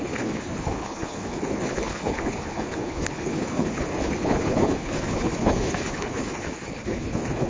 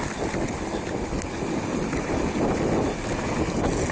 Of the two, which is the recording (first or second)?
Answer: second